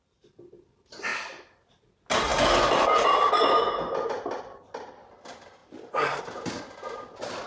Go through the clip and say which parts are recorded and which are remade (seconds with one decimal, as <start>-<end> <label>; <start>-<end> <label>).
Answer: 0.0-1.1 recorded; 1.1-1.7 remade; 1.7-5.6 recorded; 5.6-6.2 remade; 6.2-7.5 recorded